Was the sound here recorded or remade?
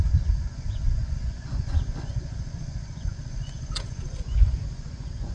remade